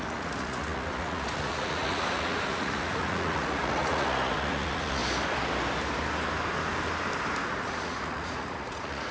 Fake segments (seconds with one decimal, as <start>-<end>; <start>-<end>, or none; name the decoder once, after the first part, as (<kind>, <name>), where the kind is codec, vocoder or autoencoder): 0.0-5.0 (vocoder, Vocos); 7.6-9.1